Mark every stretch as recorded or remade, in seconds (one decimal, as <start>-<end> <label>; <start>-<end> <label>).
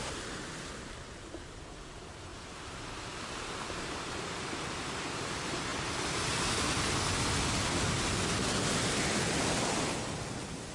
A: 0.0-10.7 recorded